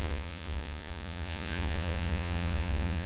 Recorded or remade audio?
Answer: remade